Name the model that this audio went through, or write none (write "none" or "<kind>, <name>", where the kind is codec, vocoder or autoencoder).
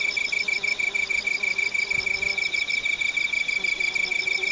none